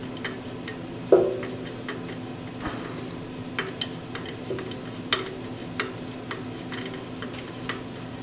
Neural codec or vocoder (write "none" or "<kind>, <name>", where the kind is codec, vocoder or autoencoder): none